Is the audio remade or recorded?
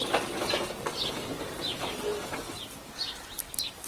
recorded